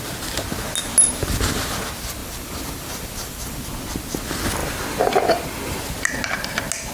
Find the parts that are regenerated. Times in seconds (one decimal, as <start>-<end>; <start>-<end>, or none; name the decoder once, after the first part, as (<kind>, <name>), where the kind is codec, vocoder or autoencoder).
2.2-3.6 (vocoder, BigVGAN v2)